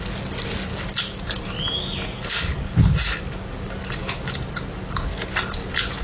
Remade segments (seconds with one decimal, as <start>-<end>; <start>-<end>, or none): none